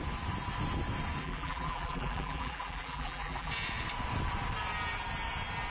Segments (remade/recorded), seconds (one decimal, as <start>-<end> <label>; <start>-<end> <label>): 0.0-1.2 recorded; 1.2-3.5 remade; 3.5-5.7 recorded